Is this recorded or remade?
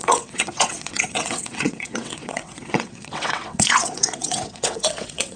remade